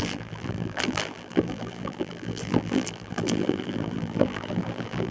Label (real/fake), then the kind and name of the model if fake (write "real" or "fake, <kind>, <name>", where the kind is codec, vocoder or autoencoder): fake, vocoder, BigVGAN v2